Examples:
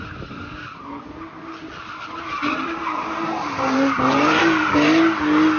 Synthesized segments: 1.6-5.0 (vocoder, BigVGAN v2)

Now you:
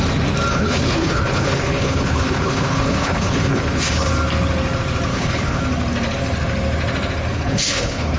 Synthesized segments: 0.5-4.1 (codec, HILCodec); 5.1-5.6; 7.3-8.2

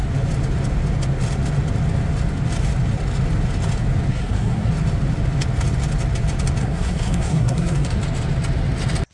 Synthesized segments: 4.1-4.7 (codec, SNAC); 6.6-8.0

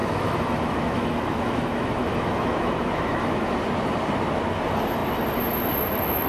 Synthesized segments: 0.0-3.5 (autoencoder, DAC-VAE)

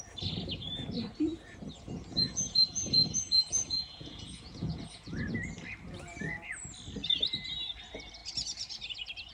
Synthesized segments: 2.1-5.2 (vocoder, Vocos)